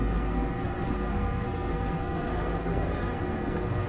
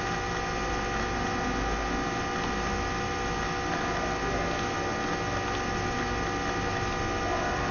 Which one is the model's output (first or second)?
first